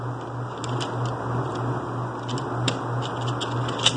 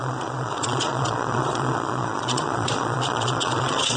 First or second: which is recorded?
first